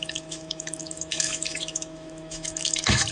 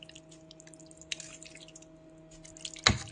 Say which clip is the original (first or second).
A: second